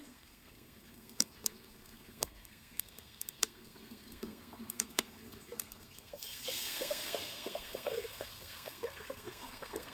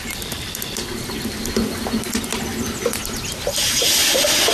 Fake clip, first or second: first